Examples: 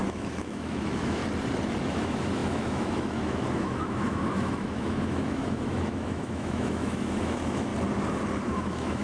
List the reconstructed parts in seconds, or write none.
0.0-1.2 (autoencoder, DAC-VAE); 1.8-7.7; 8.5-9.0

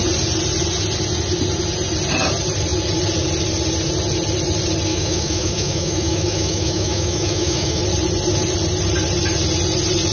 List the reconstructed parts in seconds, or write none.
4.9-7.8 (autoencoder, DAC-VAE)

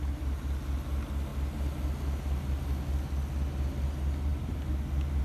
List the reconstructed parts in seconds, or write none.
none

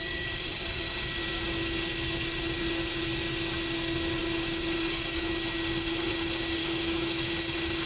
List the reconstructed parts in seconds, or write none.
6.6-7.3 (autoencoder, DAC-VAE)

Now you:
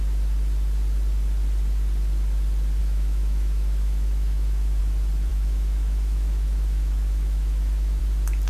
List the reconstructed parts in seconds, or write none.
2.8-4.8 (autoencoder, DAC-VAE); 5.3-8.0